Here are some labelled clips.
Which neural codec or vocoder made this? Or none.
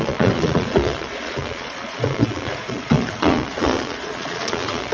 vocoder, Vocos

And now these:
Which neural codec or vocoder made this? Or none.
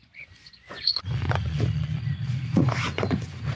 vocoder, Vocos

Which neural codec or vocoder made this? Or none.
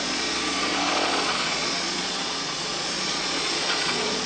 vocoder, Vocos